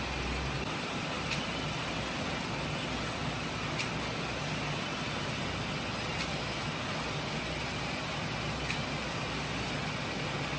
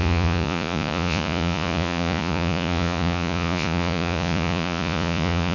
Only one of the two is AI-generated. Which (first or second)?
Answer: second